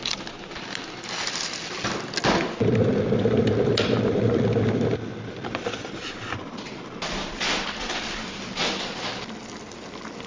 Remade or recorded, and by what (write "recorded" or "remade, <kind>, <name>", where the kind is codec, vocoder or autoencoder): recorded